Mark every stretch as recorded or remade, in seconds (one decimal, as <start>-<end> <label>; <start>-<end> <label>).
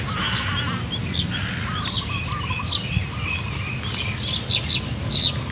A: 0.0-5.5 recorded